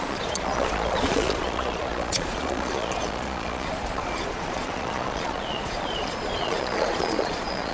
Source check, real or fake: fake